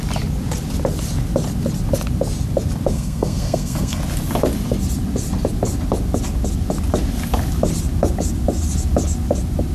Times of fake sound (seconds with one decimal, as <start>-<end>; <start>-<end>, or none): 2.9-4.0